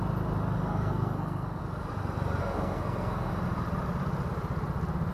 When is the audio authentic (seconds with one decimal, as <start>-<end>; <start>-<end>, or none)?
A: 0.0-0.7; 1.6-2.4; 3.3-5.1